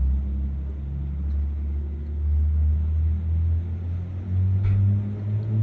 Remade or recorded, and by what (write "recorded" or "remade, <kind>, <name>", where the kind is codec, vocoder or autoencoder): recorded